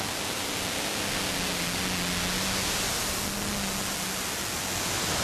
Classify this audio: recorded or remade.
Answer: recorded